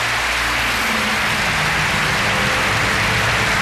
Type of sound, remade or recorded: recorded